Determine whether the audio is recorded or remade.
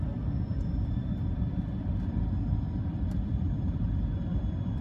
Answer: remade